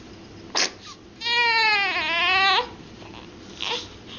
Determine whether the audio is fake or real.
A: real